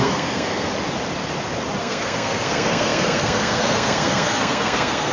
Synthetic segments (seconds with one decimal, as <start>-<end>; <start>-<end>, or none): 0.0-0.7; 1.8-5.1